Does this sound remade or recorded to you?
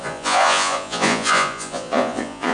remade